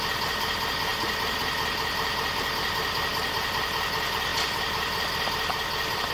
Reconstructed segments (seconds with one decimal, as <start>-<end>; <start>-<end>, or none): 0.9-1.4; 3.1-3.6; 4.3-6.1